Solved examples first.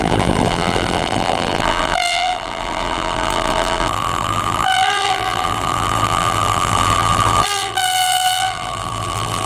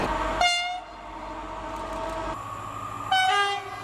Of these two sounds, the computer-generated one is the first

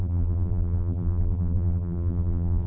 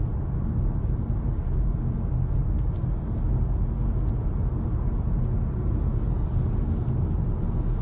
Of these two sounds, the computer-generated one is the first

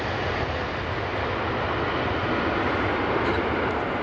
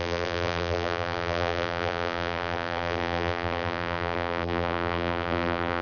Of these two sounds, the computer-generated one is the second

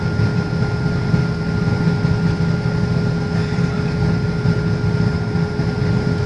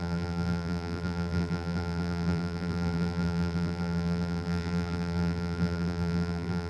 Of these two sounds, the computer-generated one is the second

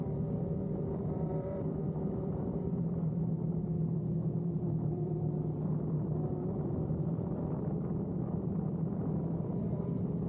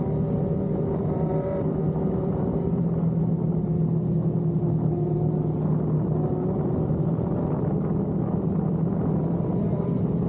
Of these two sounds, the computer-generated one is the first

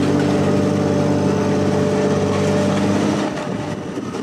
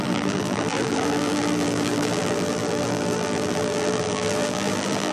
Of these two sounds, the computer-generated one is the second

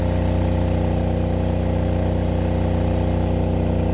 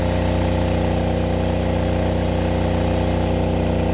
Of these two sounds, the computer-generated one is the first